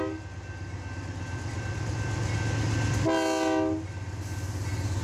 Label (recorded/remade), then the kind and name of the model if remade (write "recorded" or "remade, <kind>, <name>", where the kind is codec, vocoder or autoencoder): recorded